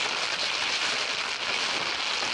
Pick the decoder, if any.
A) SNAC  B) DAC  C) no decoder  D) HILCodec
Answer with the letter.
C